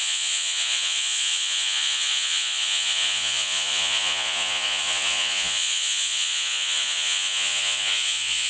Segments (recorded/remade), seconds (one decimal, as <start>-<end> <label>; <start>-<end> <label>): 0.0-8.5 remade